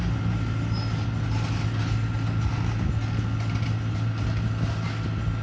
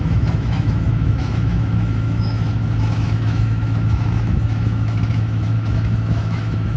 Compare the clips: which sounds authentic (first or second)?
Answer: first